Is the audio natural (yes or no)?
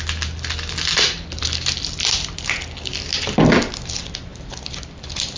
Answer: yes